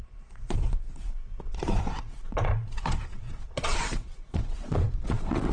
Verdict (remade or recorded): remade